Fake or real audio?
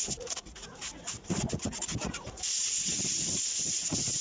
fake